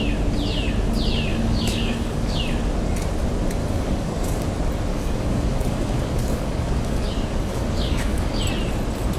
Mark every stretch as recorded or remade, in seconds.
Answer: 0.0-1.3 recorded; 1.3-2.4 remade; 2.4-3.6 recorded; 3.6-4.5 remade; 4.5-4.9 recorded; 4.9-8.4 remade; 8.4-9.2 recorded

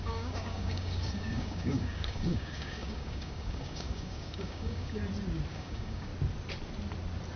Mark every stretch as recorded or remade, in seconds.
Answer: 0.0-5.0 remade; 5.0-5.5 recorded; 5.5-6.1 remade; 6.1-7.4 recorded

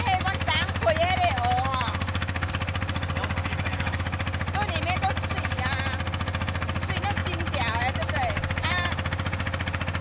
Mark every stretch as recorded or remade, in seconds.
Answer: 0.0-1.7 recorded; 1.7-2.5 remade; 2.5-3.4 recorded; 3.4-4.0 remade; 4.0-10.0 recorded

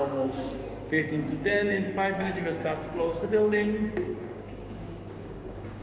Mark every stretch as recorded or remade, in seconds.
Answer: 0.0-0.6 remade; 0.6-1.1 recorded; 1.1-5.8 remade

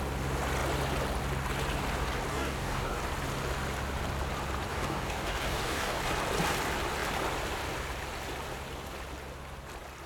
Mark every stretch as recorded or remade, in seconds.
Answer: 0.0-2.3 recorded; 2.3-3.0 remade; 3.0-4.7 recorded; 4.7-6.0 remade; 6.0-10.1 recorded

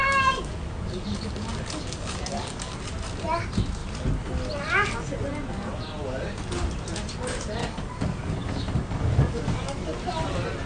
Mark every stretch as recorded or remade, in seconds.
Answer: 0.0-2.8 remade; 2.8-7.6 recorded; 7.6-9.4 remade; 9.4-10.7 recorded

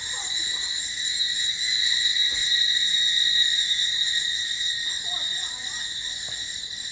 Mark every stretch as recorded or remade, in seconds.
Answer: 0.0-6.9 recorded